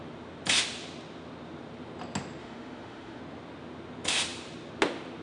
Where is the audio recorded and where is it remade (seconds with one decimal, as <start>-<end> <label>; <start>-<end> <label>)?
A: 0.0-2.4 recorded; 2.4-3.2 remade; 3.2-5.2 recorded